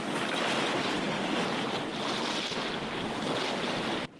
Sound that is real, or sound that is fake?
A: real